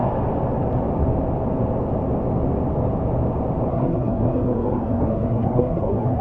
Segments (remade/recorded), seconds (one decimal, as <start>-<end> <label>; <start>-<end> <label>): 0.0-3.7 recorded; 3.7-6.2 remade